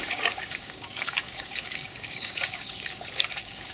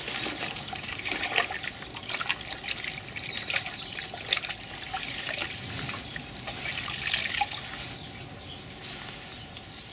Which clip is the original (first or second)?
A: second